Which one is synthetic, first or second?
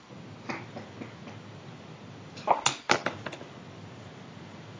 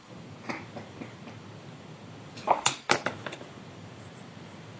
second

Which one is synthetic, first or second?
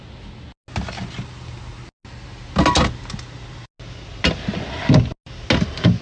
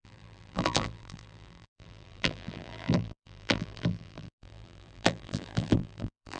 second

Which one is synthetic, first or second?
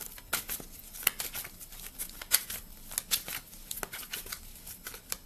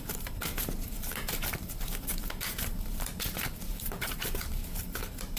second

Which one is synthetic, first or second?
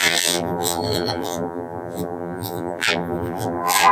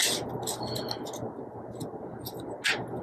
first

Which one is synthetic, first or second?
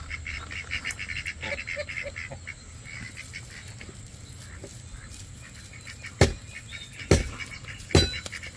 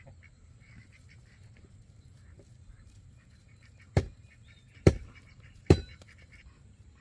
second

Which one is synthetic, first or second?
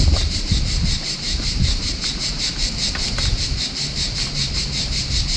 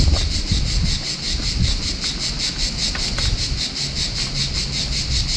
first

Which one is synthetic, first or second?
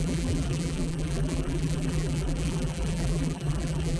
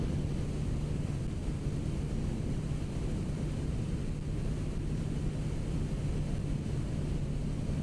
first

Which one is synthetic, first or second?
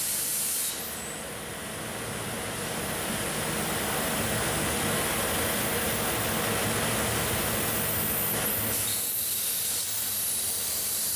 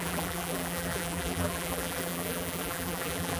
second